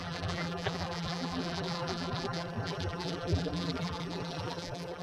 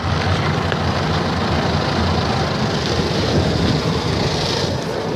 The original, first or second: second